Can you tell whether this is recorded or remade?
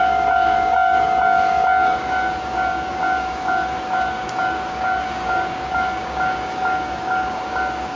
remade